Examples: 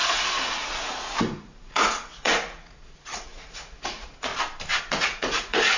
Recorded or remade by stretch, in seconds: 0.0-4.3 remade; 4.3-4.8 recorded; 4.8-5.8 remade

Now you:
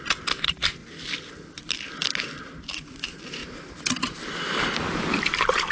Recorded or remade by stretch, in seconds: 0.0-5.7 recorded

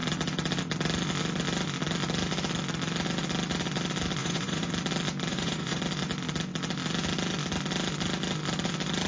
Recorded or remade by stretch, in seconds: 0.0-4.2 recorded; 4.2-4.7 remade; 4.7-5.3 recorded; 5.3-5.8 remade; 5.8-9.1 recorded